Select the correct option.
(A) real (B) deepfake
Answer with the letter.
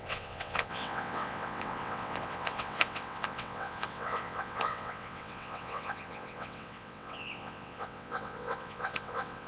B